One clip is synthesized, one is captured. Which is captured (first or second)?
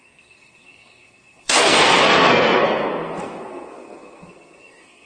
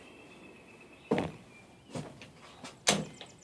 second